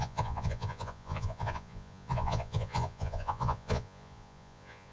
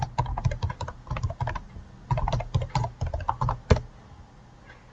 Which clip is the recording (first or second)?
second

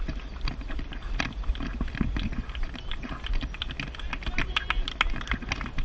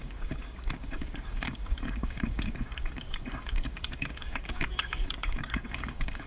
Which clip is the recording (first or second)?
first